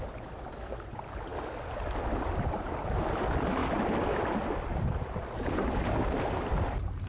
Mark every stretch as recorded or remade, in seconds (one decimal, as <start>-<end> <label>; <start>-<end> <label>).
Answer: 0.0-7.1 recorded